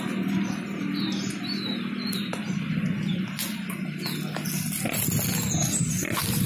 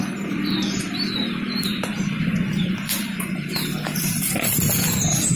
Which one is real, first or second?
first